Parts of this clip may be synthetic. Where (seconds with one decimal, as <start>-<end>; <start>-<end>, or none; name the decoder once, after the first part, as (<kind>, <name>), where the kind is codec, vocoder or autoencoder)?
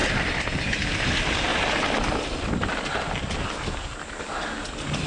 0.0-1.5 (vocoder, BigVGAN v2); 2.3-5.1